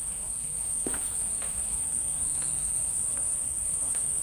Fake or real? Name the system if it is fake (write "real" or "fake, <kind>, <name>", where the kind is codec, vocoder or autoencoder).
fake, codec, SNAC